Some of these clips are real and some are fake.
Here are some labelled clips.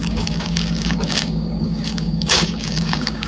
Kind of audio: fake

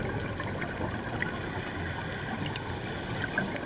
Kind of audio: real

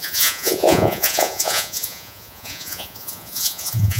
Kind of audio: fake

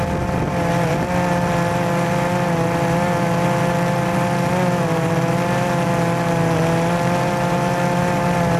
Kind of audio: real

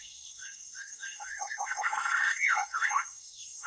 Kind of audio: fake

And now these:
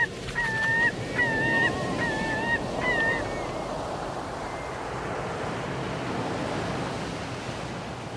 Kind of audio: real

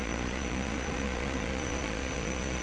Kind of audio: fake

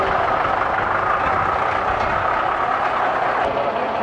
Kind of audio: real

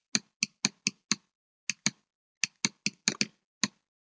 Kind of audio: real